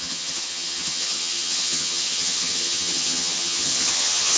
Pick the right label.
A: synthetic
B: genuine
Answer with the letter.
A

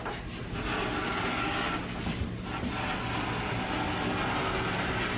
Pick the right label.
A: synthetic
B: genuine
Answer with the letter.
B